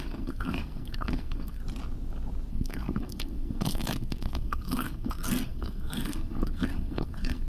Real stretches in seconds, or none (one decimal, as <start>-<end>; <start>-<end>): 1.6-2.5

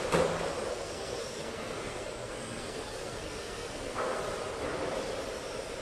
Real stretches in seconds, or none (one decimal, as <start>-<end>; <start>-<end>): 0.0-0.7; 4.2-5.8

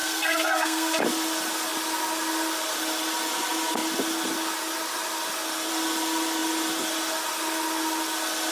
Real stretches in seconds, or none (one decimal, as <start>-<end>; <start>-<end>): 1.0-8.5

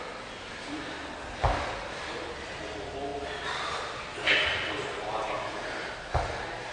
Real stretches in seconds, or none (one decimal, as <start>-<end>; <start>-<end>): 0.0-6.7

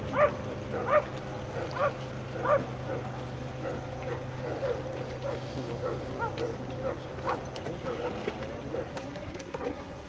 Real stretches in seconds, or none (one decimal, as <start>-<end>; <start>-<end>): 0.0-8.9

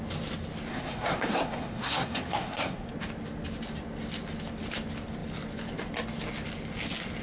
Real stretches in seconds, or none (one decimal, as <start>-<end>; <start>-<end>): 0.0-0.7; 2.9-7.2

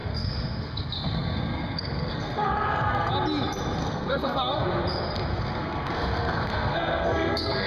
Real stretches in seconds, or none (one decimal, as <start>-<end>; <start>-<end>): 3.1-3.8; 4.6-5.3